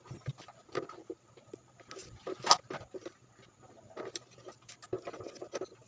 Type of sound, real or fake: real